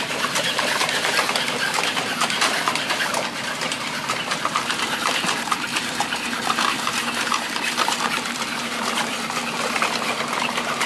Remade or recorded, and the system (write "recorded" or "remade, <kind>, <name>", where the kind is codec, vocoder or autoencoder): remade, vocoder, BigVGAN v2